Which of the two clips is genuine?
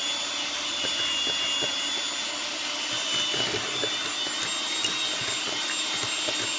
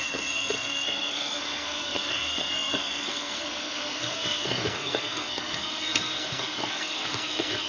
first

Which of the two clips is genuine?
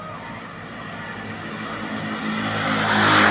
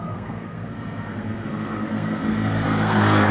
first